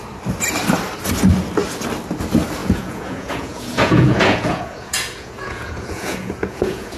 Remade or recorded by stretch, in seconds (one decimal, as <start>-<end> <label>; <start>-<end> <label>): 0.0-2.6 recorded; 2.6-7.0 remade